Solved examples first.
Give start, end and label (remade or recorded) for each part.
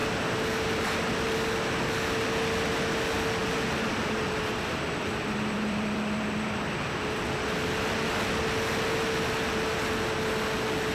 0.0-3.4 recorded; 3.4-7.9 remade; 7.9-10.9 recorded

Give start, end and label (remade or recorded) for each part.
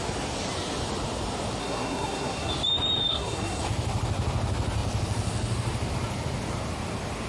0.0-1.6 recorded; 1.6-2.5 remade; 2.5-3.1 recorded; 3.1-3.6 remade; 3.6-7.3 recorded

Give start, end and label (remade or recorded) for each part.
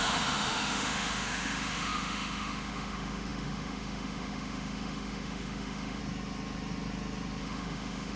0.0-6.0 remade; 6.0-7.4 recorded; 7.4-8.2 remade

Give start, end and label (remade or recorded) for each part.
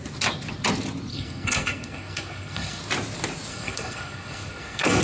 0.0-1.1 recorded; 1.1-2.8 remade; 2.8-3.5 recorded; 3.5-5.0 remade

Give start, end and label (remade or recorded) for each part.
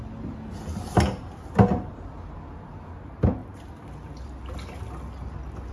0.0-3.4 recorded; 3.4-4.4 remade; 4.4-5.7 recorded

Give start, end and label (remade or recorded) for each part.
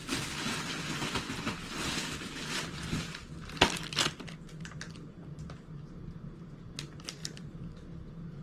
0.0-8.4 recorded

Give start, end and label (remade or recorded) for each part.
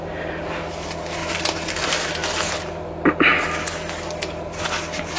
0.0-1.2 recorded; 1.2-2.2 remade; 2.2-5.2 recorded